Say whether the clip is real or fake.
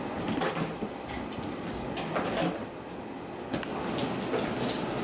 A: real